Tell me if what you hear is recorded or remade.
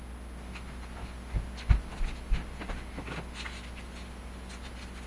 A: recorded